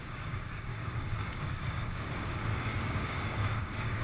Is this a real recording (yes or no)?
no